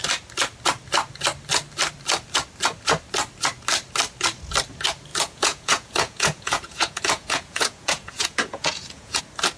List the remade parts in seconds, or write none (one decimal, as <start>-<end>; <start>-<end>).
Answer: 5.1-9.2